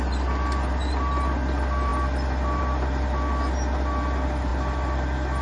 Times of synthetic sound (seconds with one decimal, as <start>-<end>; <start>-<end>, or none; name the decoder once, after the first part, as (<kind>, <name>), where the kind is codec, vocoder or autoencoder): none